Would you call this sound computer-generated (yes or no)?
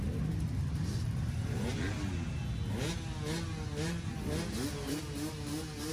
no